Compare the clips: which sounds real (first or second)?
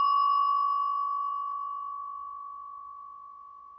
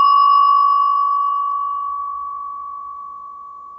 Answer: first